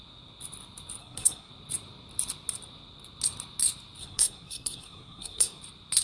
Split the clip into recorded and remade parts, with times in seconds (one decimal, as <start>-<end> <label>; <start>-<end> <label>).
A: 0.0-1.0 recorded; 1.0-1.5 remade; 1.5-4.0 recorded; 4.0-5.6 remade; 5.6-6.0 recorded

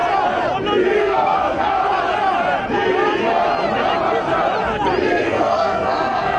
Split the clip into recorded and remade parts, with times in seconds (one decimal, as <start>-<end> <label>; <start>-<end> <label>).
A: 0.0-1.0 recorded; 1.0-1.8 remade; 1.8-5.0 recorded; 5.0-6.4 remade

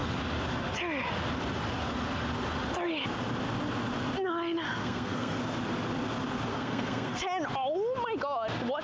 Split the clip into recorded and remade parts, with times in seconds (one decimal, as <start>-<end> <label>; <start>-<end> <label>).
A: 0.0-4.8 recorded; 4.8-5.4 remade; 5.4-6.5 recorded; 6.5-7.2 remade; 7.2-8.8 recorded

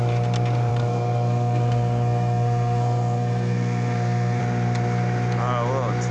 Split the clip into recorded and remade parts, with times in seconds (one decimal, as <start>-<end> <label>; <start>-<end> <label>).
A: 0.0-0.7 recorded; 0.7-4.4 remade; 4.4-6.1 recorded

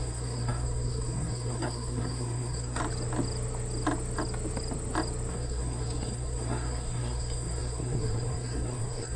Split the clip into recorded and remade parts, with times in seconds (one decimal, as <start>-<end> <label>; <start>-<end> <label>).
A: 0.0-2.8 remade; 2.8-5.3 recorded; 5.3-9.2 remade